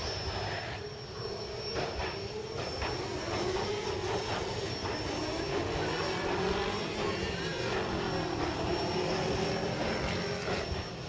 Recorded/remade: recorded